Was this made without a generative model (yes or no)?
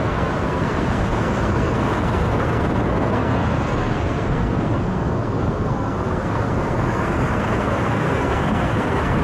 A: no